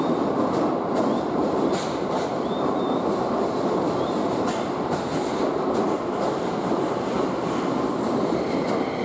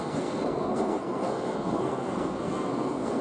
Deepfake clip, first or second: second